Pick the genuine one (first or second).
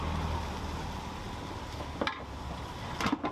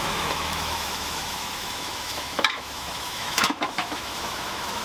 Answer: first